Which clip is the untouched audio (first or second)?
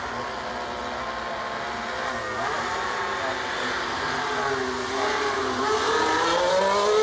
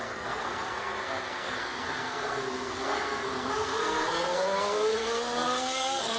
first